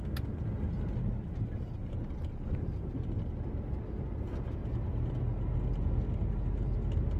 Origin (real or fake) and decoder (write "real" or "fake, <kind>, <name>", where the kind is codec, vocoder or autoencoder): real